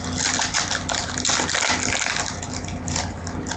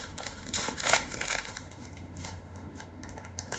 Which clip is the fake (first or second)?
second